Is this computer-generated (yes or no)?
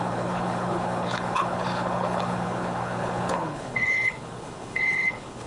yes